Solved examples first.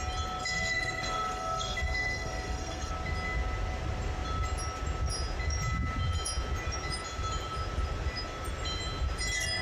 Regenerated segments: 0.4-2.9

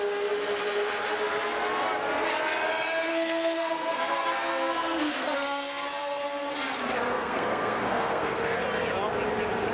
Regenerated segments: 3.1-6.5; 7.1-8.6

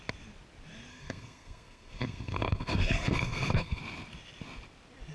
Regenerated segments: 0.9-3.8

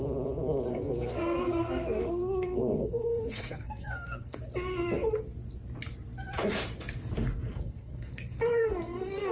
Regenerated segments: 0.7-4.4; 7.4-9.3